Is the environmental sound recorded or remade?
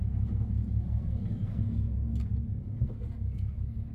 remade